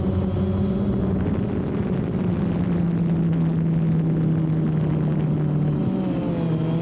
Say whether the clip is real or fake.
real